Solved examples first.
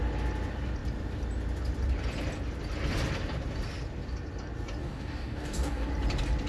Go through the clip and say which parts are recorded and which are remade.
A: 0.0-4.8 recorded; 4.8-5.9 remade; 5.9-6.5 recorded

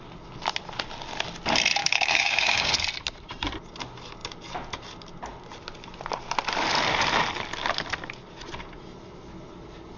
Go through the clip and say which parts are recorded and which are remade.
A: 0.0-1.8 recorded; 1.8-2.7 remade; 2.7-10.0 recorded